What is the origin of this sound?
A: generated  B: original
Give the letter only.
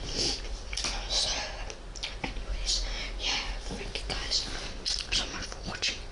B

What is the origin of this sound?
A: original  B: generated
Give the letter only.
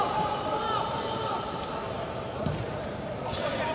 B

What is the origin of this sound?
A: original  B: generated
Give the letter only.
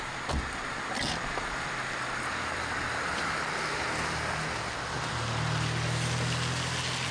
A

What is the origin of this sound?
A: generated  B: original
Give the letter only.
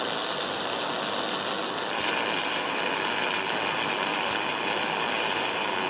B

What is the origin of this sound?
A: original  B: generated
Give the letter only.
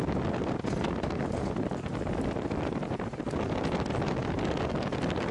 A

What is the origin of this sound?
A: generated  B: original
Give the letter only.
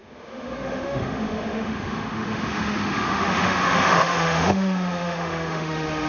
A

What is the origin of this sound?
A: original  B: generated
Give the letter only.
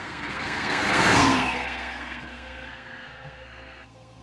B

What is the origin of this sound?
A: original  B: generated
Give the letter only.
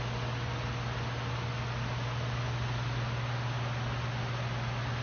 A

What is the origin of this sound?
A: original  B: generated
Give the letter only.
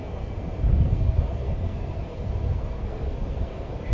B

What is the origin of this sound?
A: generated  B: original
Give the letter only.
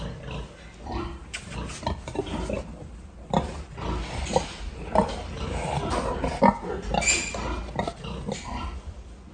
B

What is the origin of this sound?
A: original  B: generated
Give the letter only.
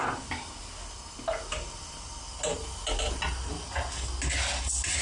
A